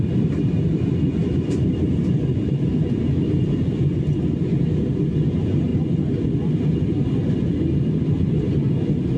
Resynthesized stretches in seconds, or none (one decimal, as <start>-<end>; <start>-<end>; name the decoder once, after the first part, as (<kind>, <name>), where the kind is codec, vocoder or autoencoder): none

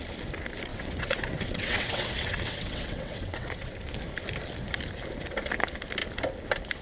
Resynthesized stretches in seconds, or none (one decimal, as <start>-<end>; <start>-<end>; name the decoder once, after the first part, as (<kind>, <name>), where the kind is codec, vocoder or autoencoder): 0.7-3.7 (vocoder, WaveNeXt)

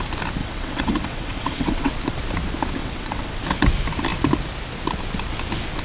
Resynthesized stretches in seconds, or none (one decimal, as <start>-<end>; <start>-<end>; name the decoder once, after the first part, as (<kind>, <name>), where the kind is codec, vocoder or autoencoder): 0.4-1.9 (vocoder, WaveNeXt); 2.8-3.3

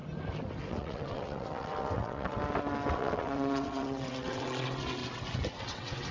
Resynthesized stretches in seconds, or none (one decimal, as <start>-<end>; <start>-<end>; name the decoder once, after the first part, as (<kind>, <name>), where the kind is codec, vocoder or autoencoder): 0.7-2.4 (vocoder, WaveNeXt); 2.9-5.0; 5.6-6.1

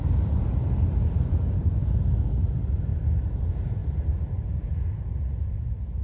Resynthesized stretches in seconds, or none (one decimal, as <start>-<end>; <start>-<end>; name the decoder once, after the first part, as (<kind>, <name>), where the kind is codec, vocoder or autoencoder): none

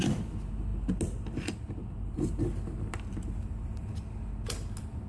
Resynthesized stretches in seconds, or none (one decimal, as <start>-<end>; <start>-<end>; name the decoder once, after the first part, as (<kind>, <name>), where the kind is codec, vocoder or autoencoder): none

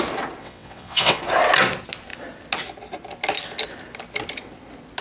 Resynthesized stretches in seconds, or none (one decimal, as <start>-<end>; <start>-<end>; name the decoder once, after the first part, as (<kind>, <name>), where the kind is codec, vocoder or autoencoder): 0.4-1.2 (vocoder, WaveNeXt)